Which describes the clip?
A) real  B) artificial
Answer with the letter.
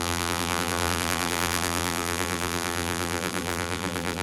B